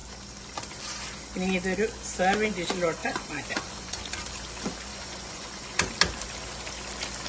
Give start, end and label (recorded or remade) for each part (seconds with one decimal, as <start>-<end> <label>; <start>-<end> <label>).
0.0-3.0 recorded; 3.0-4.1 remade; 4.1-4.9 recorded; 4.9-5.9 remade; 5.9-7.3 recorded